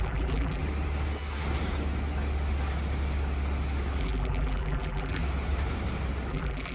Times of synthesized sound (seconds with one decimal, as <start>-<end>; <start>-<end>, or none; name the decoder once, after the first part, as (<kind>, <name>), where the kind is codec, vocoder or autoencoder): 0.0-0.6 (vocoder, BigVGAN v2); 4.0-5.2; 6.3-6.7

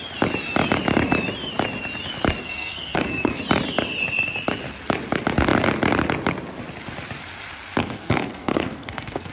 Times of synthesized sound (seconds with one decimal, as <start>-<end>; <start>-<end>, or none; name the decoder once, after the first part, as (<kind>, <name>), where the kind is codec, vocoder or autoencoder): 2.4-3.4 (codec, SNAC); 7.8-9.3